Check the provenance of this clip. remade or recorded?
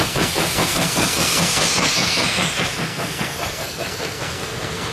remade